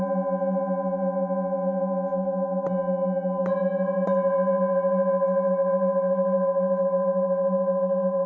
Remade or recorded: recorded